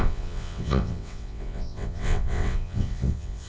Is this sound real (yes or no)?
no